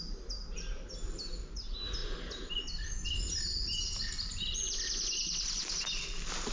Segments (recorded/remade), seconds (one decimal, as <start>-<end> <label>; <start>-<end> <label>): 0.0-6.5 recorded

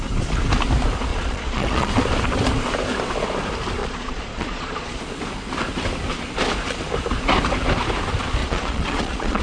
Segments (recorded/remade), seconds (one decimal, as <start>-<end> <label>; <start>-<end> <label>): 0.0-1.1 recorded; 1.1-1.9 remade; 1.9-3.8 recorded; 3.8-5.0 remade; 5.0-8.4 recorded; 8.4-9.4 remade

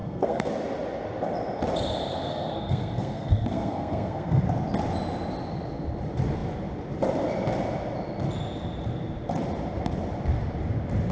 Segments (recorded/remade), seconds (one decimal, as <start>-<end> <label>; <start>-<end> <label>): 0.0-0.5 remade; 0.5-2.1 recorded; 2.1-4.4 remade; 4.4-11.1 recorded

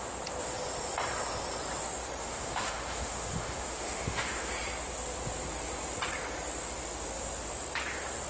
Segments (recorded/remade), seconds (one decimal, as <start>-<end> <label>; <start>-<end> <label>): 0.0-2.2 recorded; 2.2-4.5 remade; 4.5-8.3 recorded

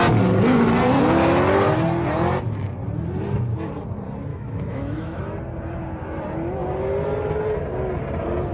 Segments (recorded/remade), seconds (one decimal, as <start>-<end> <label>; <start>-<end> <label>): 0.0-4.3 recorded; 4.3-5.2 remade; 5.2-8.5 recorded